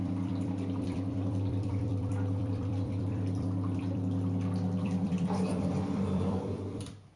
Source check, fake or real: fake